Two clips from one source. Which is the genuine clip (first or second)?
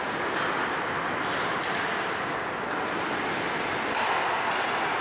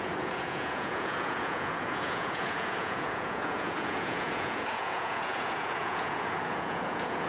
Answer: first